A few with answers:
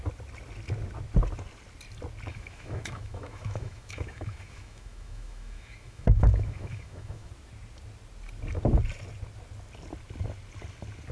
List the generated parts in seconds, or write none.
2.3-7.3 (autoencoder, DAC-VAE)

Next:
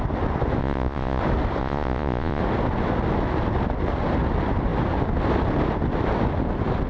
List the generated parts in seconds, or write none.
0.6-1.2 (vocoder, Vocos); 1.6-2.4

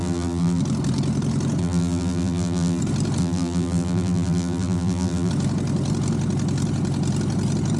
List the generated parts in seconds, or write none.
0.0-0.6 (vocoder, BigVGAN v2); 1.6-2.8; 3.2-5.3